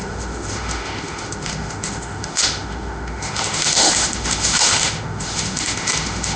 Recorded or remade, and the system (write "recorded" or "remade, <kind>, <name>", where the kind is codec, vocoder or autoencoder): remade, autoencoder, DAC-VAE